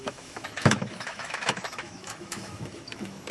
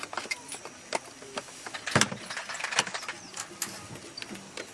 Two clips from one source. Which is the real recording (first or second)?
second